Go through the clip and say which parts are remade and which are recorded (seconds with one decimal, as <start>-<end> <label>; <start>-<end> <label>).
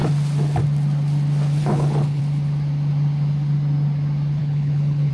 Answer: 0.0-1.6 recorded; 1.6-2.2 remade; 2.2-4.4 recorded; 4.4-5.1 remade